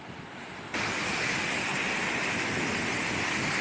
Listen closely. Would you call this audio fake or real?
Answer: real